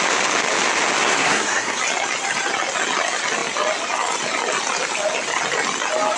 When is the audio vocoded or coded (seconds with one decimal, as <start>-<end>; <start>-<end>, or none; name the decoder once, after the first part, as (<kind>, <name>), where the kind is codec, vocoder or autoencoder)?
1.0-1.8 (codec, SNAC)

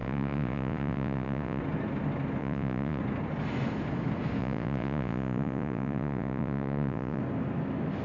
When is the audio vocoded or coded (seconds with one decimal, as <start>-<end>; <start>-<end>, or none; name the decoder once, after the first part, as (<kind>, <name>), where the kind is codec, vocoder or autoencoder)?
0.0-1.6 (vocoder, Vocos); 2.4-3.0; 4.4-7.2